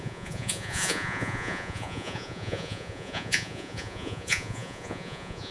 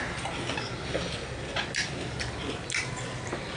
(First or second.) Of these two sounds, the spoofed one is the first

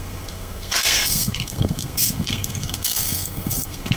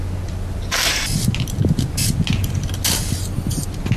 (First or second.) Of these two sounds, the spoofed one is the first